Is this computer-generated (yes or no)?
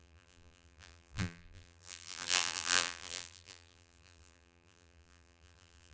yes